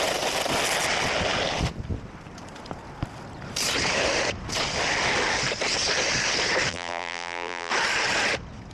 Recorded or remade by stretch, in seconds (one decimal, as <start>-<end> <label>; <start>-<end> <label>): 0.0-6.7 recorded; 6.7-7.7 remade; 7.7-8.7 recorded